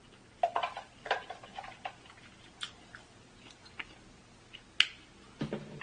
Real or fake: real